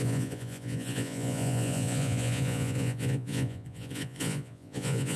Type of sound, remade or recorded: remade